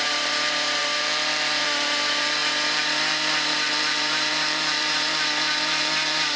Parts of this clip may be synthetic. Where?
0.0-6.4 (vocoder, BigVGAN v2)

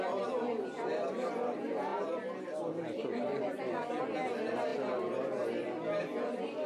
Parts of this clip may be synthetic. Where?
1.9-3.9 (vocoder, BigVGAN v2)

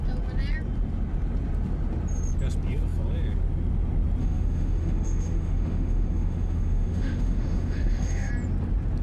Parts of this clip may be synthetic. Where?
4.2-8.3 (autoencoder, DAC-VAE)

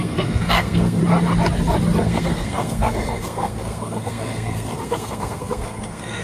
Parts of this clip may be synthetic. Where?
0.0-1.0 (codec, SNAC); 2.0-6.2

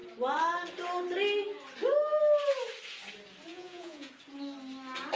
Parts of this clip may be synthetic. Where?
3.5-4.1 (vocoder, Vocos)

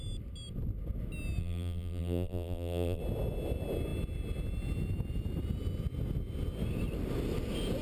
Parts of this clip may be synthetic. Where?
1.4-3.0 (vocoder, BigVGAN v2)

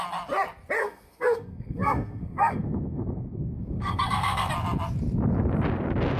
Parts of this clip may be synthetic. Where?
0.8-4.5 (codec, SNAC)